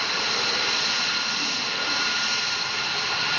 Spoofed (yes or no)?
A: yes